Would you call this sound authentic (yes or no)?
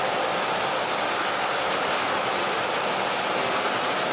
yes